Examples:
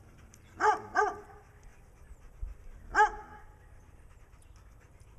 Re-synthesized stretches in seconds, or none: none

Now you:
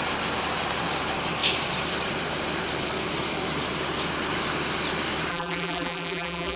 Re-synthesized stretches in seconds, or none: 5.3-6.6 (vocoder, BigVGAN v2)

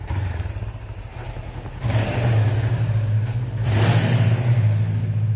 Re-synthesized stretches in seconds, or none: none

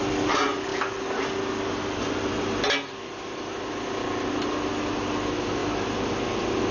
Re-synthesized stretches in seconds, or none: none

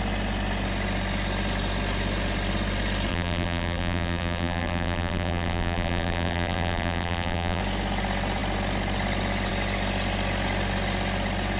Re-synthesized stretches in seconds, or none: 3.1-7.6 (vocoder, BigVGAN v2)

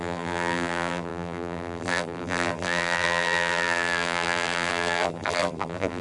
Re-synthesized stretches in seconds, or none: 0.0-6.0 (vocoder, BigVGAN v2)

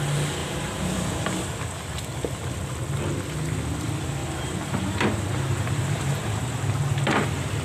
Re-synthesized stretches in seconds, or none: 0.4-1.4 (vocoder, BigVGAN v2); 4.2-6.6